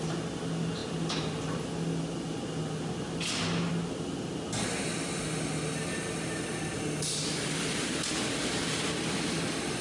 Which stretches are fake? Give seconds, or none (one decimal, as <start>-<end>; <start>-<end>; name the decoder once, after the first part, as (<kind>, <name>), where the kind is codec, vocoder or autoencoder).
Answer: none